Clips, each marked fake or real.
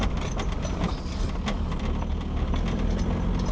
real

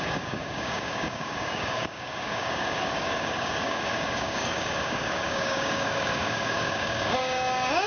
fake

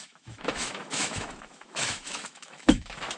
fake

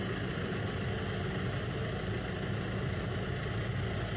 real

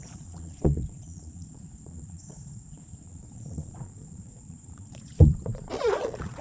fake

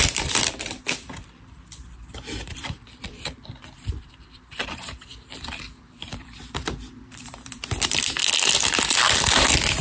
fake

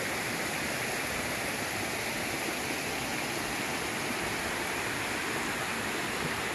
real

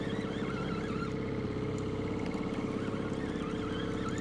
real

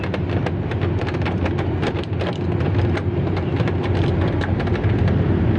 real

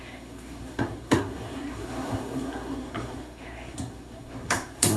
fake